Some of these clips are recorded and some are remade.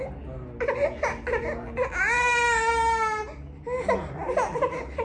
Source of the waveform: recorded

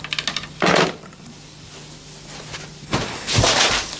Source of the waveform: recorded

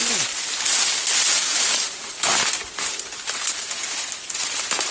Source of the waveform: recorded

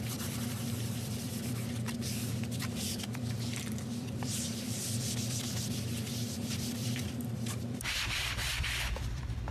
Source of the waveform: remade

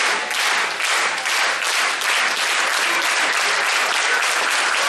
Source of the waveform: recorded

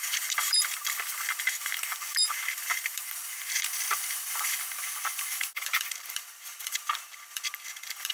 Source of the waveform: remade